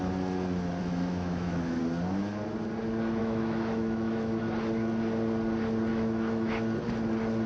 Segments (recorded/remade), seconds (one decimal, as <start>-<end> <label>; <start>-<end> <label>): 0.0-0.8 recorded; 0.8-1.8 remade; 1.8-3.2 recorded; 3.2-4.4 remade; 4.4-5.9 recorded; 5.9-6.5 remade; 6.5-7.5 recorded